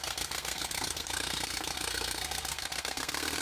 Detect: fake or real fake